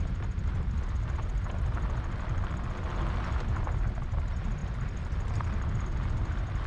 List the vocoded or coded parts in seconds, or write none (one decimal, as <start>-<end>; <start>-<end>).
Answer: none